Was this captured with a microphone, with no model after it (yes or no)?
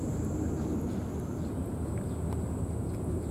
yes